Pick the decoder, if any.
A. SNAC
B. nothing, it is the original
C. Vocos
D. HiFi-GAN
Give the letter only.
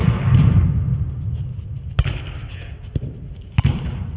B